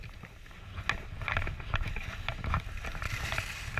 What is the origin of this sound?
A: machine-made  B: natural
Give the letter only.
B